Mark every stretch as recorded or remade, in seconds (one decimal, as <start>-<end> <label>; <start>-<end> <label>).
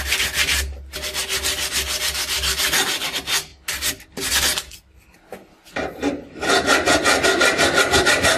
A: 0.0-8.4 recorded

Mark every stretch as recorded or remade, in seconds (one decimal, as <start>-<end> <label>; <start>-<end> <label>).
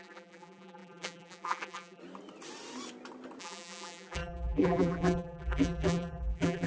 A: 0.0-2.0 remade; 2.0-3.4 recorded; 3.4-6.7 remade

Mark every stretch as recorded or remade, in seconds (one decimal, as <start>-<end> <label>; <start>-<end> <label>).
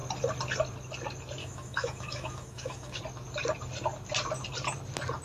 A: 0.0-1.4 recorded; 1.4-3.0 remade; 3.0-5.2 recorded